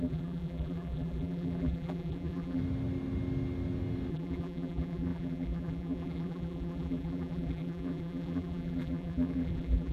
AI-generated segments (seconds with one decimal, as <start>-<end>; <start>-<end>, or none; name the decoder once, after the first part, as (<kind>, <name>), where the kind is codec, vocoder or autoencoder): 0.0-2.6 (vocoder, BigVGAN v2); 4.1-9.9